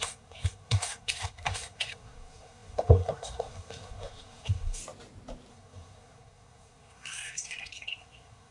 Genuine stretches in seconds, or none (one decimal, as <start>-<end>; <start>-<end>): 4.8-5.5